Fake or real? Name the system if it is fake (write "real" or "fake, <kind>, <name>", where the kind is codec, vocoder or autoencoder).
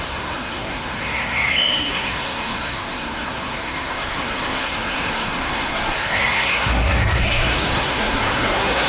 fake, codec, SNAC